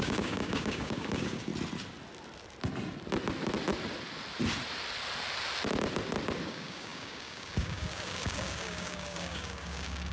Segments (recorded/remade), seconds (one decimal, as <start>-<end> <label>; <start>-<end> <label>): 0.0-1.5 remade; 1.5-6.4 recorded; 6.4-10.1 remade